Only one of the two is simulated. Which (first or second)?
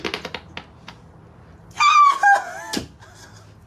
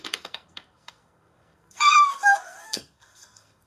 second